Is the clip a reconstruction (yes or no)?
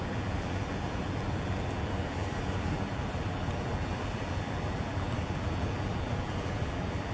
yes